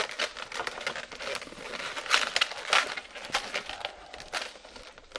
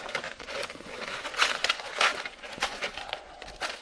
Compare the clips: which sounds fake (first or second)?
second